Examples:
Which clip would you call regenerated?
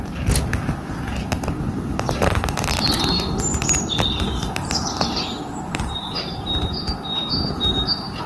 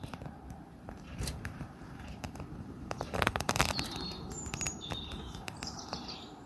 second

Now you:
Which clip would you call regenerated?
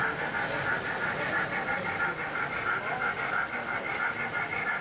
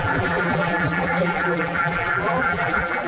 second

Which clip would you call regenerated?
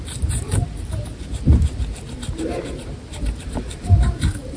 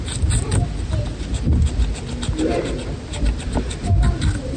first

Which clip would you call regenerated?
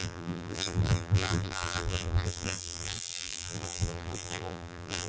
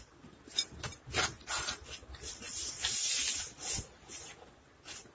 first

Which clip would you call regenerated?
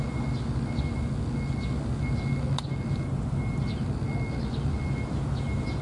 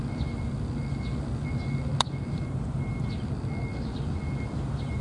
second